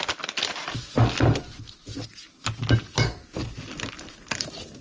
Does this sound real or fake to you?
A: real